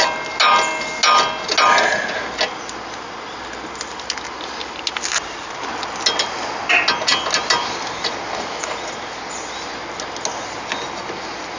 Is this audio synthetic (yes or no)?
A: no